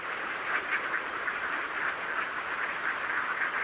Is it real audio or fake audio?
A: real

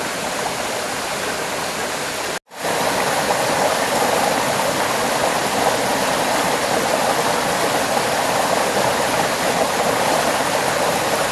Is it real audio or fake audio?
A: real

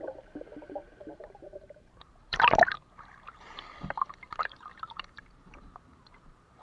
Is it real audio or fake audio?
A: fake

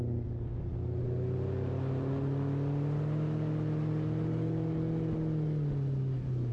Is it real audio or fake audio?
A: real